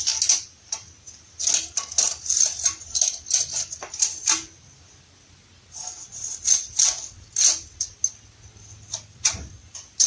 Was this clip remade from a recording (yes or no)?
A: no